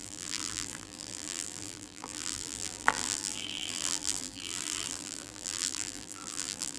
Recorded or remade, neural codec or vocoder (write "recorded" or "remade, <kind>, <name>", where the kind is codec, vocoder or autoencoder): remade, vocoder, BigVGAN v2